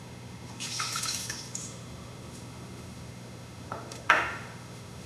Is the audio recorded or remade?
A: remade